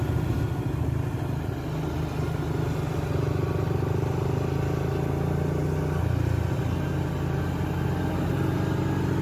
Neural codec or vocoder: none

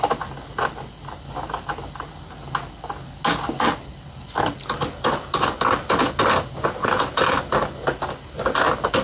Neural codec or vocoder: none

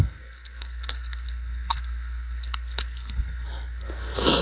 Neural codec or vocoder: codec, SNAC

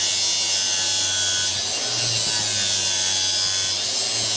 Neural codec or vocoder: none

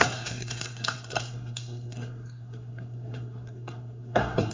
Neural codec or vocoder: codec, SNAC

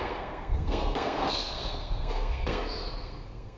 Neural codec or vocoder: codec, SNAC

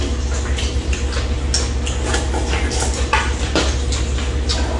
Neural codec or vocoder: none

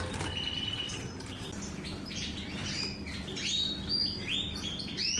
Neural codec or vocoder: none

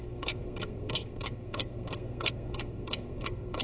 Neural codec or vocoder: codec, SNAC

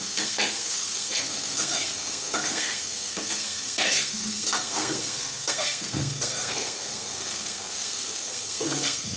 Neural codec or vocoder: codec, SNAC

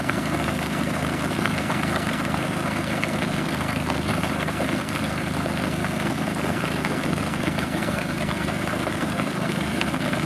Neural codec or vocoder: codec, SNAC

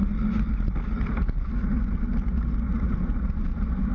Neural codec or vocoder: none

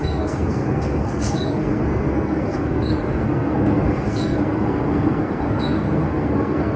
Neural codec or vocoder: codec, SNAC